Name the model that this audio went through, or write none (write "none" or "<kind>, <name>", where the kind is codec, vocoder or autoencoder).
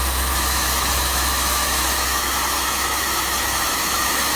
autoencoder, DAC-VAE